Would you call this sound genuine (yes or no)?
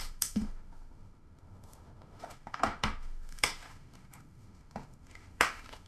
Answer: no